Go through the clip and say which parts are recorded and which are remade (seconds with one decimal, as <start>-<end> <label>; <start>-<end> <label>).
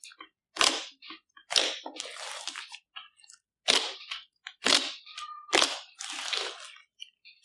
0.0-7.4 recorded